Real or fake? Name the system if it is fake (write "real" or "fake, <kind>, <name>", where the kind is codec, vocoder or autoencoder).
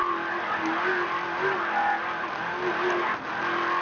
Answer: real